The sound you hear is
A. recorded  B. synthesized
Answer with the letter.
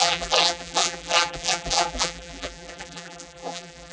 B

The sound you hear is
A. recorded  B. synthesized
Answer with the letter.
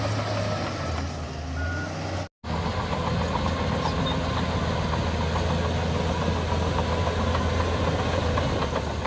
A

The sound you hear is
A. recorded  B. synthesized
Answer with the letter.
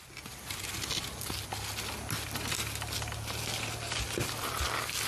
A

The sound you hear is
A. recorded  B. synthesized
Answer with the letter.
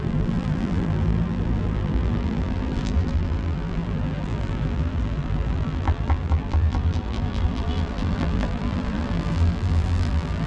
B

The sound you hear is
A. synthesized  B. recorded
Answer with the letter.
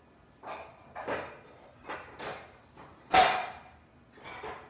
B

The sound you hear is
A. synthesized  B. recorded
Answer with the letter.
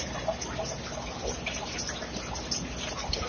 B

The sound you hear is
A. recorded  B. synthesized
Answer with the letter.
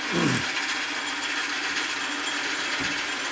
B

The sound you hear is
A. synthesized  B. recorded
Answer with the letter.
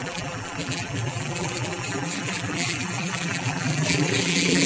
A